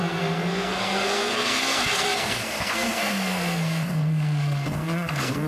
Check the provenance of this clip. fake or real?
fake